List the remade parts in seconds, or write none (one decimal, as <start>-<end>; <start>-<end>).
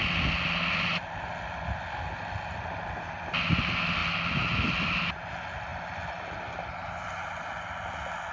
none